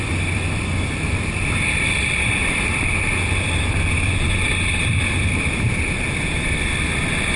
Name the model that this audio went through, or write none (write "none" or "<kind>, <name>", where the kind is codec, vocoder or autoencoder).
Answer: vocoder, BigVGAN v2